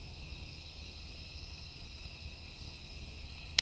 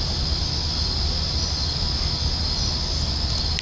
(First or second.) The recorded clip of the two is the second